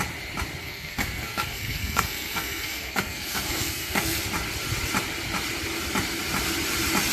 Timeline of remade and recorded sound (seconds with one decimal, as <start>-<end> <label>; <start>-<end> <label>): 0.0-0.6 recorded; 0.6-4.2 remade; 4.2-7.1 recorded